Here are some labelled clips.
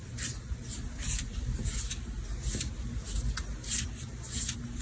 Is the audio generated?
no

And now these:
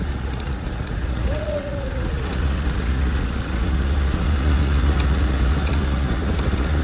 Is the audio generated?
yes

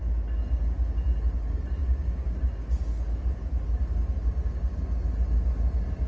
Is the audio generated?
no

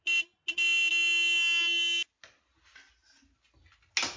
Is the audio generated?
no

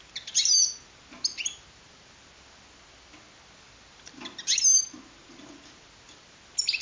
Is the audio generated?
no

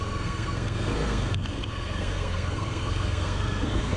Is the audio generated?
yes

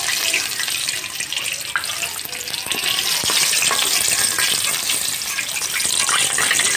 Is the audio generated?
no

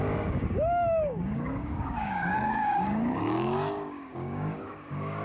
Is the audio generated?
yes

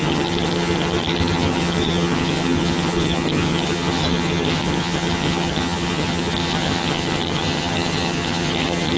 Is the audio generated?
yes